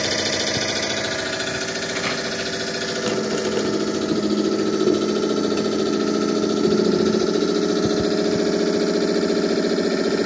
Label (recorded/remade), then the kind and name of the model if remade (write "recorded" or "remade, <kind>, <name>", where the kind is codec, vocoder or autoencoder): recorded